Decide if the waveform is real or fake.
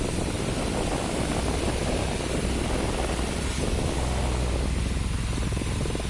real